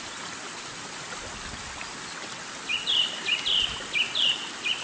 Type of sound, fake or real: real